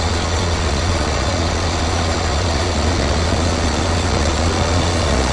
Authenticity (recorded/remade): remade